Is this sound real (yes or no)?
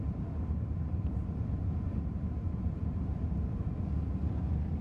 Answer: no